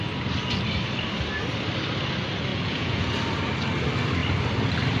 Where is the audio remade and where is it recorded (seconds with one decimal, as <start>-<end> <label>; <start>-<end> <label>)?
0.0-2.5 recorded; 2.5-3.1 remade; 3.1-5.0 recorded